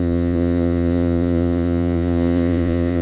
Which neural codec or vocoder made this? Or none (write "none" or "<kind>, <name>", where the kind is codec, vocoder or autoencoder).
vocoder, Vocos